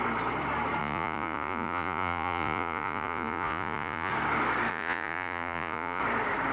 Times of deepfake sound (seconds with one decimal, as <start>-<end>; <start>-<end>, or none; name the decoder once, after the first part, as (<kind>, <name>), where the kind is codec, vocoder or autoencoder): 0.8-4.1 (vocoder, Vocos); 4.7-6.0